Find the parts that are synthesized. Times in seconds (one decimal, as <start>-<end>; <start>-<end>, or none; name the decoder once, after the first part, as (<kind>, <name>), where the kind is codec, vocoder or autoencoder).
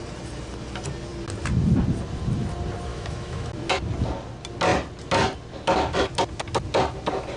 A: 2.9-3.5 (autoencoder, DAC-VAE)